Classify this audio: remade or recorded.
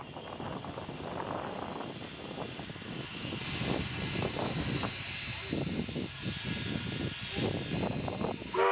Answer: recorded